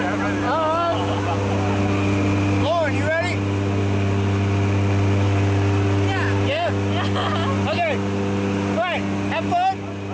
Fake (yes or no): no